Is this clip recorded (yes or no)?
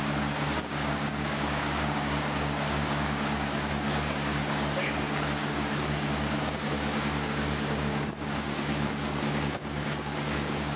no